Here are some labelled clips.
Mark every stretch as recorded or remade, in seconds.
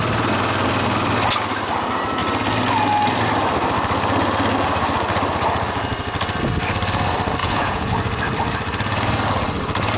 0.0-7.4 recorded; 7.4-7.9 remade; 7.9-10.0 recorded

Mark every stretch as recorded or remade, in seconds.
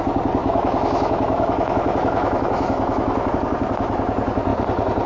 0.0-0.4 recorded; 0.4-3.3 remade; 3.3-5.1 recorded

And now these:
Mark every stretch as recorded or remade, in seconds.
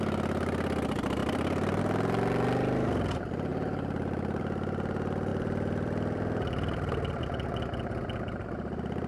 0.0-1.2 recorded; 1.2-1.8 remade; 1.8-3.5 recorded; 3.5-4.4 remade; 4.4-5.3 recorded; 5.3-7.2 remade; 7.2-9.1 recorded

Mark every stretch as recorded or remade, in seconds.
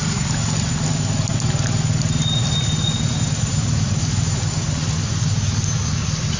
0.0-6.4 recorded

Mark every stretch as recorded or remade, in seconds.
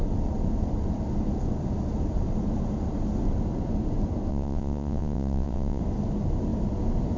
0.0-4.3 recorded; 4.3-5.8 remade; 5.8-7.2 recorded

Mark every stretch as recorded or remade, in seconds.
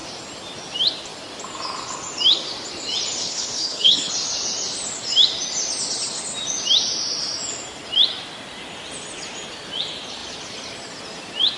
0.0-3.2 recorded; 3.2-4.1 remade; 4.1-11.6 recorded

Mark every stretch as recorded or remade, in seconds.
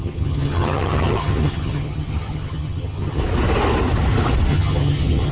0.0-3.2 remade; 3.2-4.5 recorded; 4.5-5.3 remade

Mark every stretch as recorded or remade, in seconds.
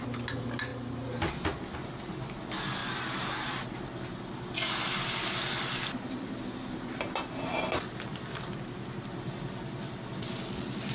0.0-10.9 recorded